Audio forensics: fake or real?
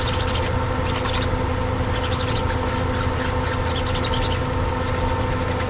real